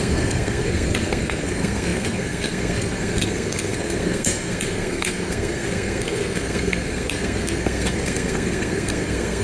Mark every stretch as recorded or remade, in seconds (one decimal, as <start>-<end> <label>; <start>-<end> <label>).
0.0-9.4 remade